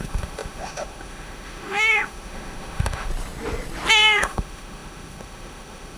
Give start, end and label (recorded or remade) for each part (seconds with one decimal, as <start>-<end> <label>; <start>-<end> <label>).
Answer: 0.0-3.1 remade; 3.1-3.9 recorded; 3.9-6.0 remade